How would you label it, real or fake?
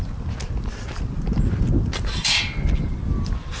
real